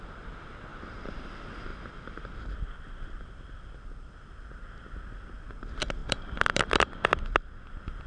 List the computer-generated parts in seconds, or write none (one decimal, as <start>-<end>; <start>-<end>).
0.7-1.2; 6.0-7.2